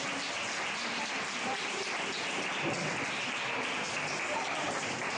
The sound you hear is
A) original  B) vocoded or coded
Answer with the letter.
A